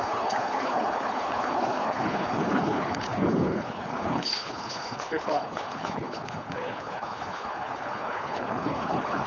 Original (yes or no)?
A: no